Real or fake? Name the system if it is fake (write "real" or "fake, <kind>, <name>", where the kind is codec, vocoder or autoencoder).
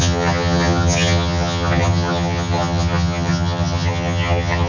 fake, vocoder, HiFi-GAN